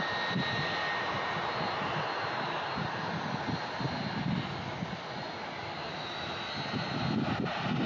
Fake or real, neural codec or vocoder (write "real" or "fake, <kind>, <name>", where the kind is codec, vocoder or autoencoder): real